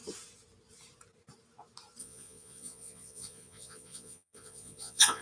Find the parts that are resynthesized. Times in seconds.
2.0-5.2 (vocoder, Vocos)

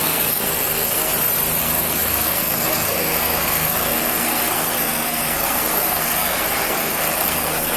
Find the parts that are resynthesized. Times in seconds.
0.0-1.1 (codec, SNAC); 1.6-7.8

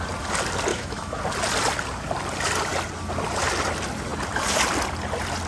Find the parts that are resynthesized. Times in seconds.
0.7-1.2 (autoencoder, DAC-VAE)